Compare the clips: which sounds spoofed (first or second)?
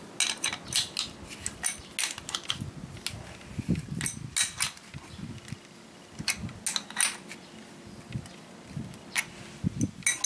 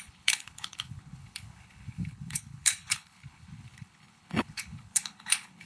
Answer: second